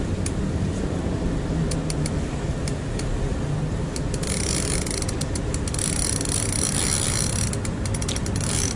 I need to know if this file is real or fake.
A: real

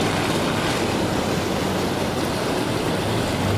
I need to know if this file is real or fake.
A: real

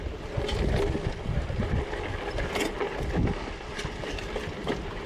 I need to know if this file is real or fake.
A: real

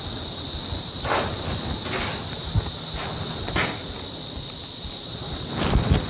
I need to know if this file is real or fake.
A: real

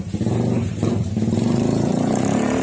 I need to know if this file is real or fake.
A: fake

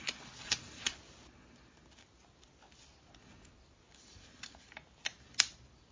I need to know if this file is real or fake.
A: real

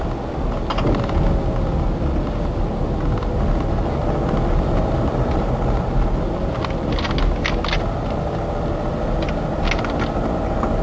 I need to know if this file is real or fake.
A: real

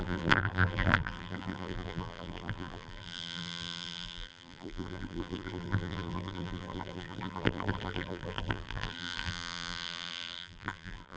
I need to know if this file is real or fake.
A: fake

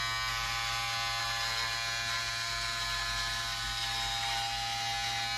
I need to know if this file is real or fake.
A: real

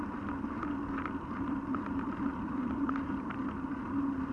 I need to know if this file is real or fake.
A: fake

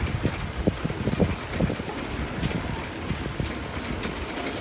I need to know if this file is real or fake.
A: real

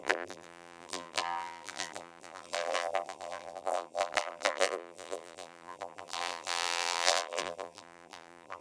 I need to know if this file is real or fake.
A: fake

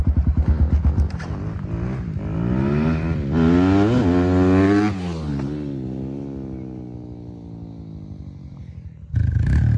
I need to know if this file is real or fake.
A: real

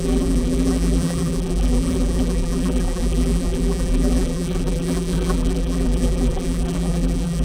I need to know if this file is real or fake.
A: fake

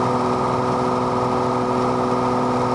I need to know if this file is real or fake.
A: real